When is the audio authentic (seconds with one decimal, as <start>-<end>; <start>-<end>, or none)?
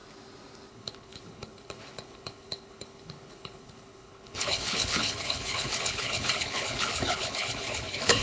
0.0-0.7